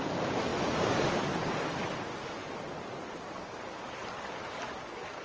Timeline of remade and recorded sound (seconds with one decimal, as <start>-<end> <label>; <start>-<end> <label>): 0.0-5.2 recorded